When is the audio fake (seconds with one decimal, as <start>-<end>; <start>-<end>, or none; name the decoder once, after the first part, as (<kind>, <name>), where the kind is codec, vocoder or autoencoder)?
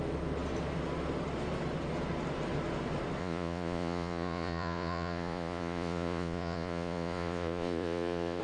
3.2-8.4 (vocoder, Vocos)